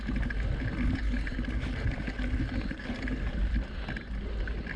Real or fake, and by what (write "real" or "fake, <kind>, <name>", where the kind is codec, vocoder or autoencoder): real